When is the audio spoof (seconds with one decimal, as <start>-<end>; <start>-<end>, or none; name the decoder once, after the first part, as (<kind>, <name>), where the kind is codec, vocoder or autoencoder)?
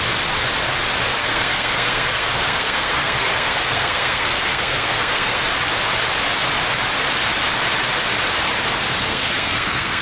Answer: 1.2-5.4 (codec, SNAC); 9.1-10.0